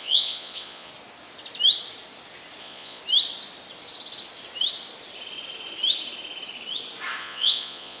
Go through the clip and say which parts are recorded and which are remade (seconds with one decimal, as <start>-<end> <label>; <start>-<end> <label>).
0.0-0.9 remade; 0.9-2.6 recorded; 2.6-3.0 remade; 3.0-7.2 recorded; 7.2-8.0 remade